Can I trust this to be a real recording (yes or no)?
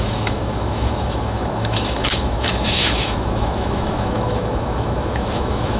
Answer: no